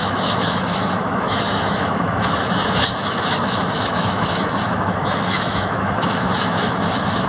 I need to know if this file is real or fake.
fake